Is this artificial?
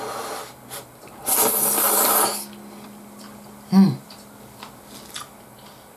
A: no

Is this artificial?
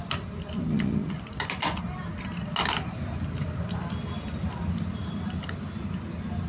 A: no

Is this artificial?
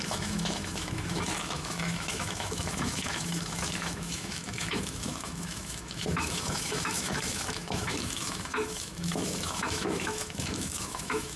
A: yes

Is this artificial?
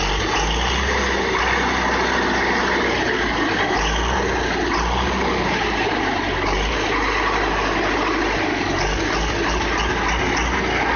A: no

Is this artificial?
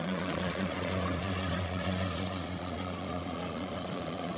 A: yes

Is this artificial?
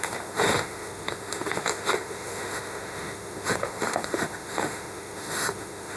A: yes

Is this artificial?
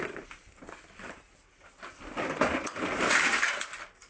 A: no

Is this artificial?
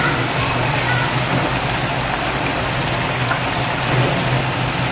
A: no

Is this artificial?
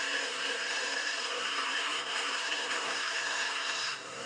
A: yes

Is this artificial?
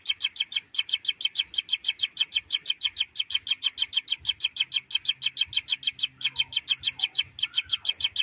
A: no